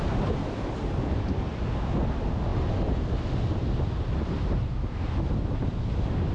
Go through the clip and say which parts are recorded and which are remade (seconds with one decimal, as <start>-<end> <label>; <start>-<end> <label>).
0.0-6.3 recorded